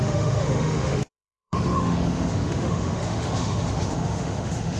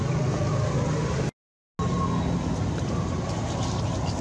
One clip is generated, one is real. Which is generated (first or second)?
first